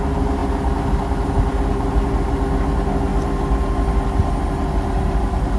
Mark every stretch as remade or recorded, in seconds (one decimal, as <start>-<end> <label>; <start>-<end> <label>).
0.0-5.6 recorded